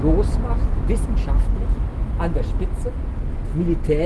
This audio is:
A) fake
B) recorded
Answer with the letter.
B